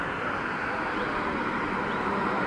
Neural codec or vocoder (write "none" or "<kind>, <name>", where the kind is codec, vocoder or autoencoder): none